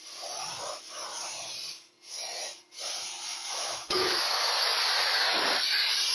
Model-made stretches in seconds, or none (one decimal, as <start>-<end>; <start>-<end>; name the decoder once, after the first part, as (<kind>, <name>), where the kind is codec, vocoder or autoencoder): 3.3-4.5 (autoencoder, DAC-VAE)